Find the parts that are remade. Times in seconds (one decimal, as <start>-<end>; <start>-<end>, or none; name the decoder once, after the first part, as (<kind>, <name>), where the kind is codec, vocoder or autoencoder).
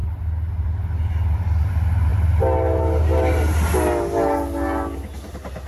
none